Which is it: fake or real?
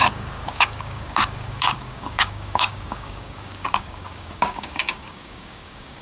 fake